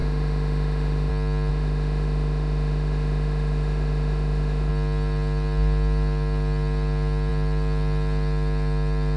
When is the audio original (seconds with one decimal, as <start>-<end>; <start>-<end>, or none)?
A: 1.1-1.5; 4.7-9.2